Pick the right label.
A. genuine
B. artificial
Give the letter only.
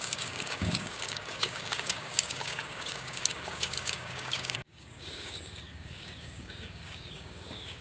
B